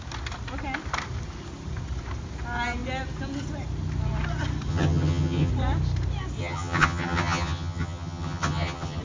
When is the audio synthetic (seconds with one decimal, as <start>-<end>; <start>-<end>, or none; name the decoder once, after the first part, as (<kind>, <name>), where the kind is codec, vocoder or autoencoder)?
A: 4.7-5.5 (vocoder, HiFi-GAN); 6.4-9.0